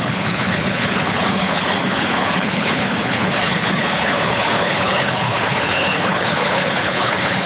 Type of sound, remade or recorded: remade